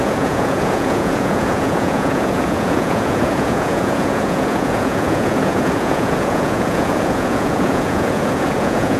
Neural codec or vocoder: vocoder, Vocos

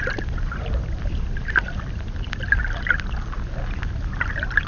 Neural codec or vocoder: none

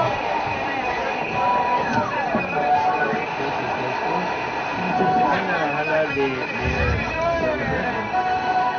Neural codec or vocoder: none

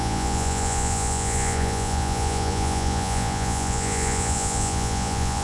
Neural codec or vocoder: vocoder, Vocos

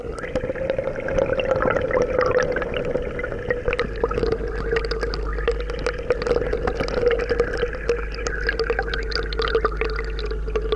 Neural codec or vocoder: none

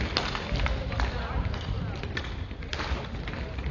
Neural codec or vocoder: none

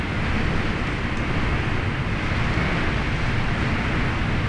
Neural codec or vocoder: none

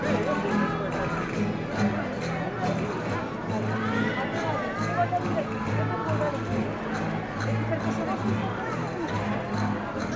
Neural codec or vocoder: none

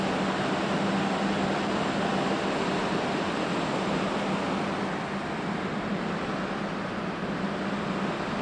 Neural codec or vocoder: none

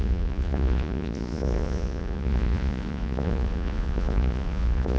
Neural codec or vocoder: vocoder, Vocos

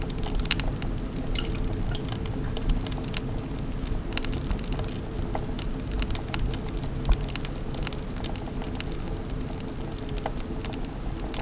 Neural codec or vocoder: none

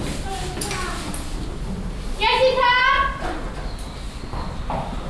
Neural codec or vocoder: none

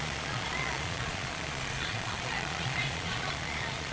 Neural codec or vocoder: vocoder, Vocos